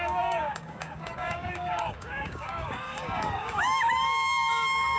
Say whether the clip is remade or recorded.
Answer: remade